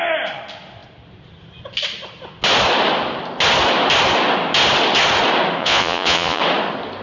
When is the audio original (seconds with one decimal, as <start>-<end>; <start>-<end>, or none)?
0.0-5.6; 6.4-7.0